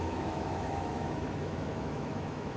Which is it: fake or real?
fake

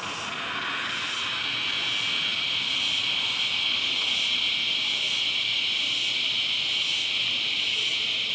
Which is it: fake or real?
real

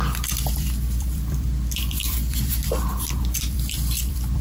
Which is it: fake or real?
fake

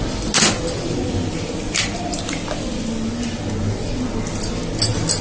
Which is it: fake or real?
real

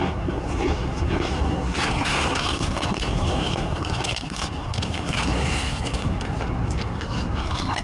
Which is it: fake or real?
fake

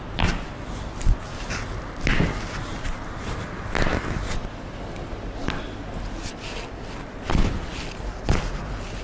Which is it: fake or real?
real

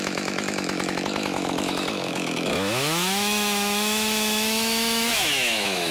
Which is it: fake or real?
fake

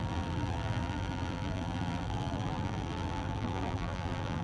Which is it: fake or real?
fake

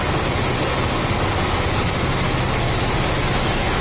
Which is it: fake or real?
real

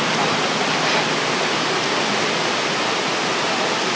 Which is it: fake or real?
real